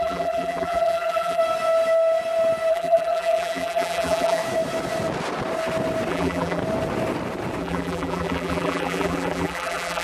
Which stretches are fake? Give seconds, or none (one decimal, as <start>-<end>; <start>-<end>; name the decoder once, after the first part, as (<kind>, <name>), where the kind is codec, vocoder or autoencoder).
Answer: 0.0-1.4 (vocoder, BigVGAN v2); 2.7-4.4; 6.1-6.6; 7.6-10.0